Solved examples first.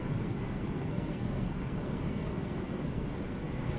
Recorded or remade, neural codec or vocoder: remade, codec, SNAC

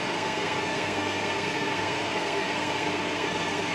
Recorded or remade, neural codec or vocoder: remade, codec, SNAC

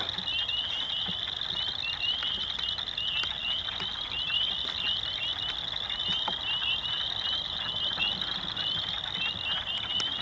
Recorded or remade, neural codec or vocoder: recorded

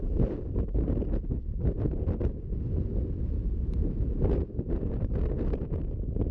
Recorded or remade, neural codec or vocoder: recorded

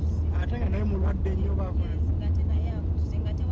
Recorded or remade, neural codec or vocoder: recorded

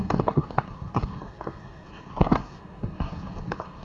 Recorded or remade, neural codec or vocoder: remade, codec, SNAC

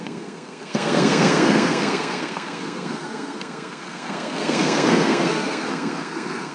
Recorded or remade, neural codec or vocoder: remade, codec, SNAC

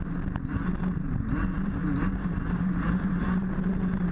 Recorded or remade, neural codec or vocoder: recorded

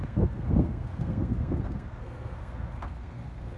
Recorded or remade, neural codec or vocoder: remade, codec, SNAC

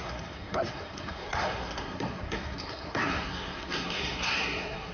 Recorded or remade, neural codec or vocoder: remade, codec, SNAC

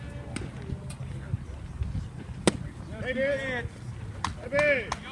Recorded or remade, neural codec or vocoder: recorded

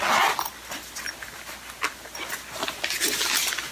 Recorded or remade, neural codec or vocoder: recorded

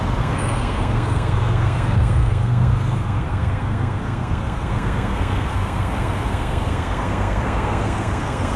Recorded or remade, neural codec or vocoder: remade, codec, SNAC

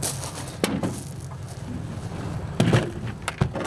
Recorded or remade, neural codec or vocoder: recorded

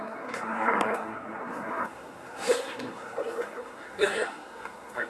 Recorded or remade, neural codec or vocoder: remade, codec, SNAC